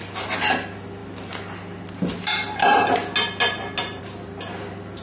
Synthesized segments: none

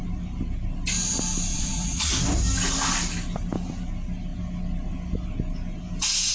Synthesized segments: 1.5-2.1 (vocoder, Vocos)